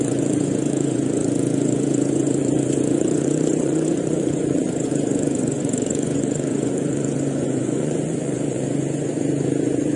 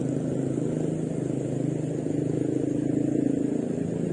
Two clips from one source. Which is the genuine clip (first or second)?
second